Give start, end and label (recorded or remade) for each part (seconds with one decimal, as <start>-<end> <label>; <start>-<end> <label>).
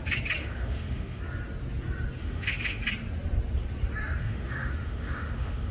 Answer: 0.0-0.4 recorded; 0.4-1.2 remade; 1.2-2.2 recorded; 2.2-2.8 remade; 2.8-4.2 recorded; 4.2-5.7 remade